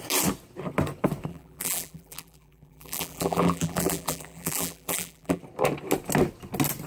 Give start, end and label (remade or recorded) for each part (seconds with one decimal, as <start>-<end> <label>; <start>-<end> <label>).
0.0-1.3 recorded; 1.3-5.4 remade; 5.4-6.9 recorded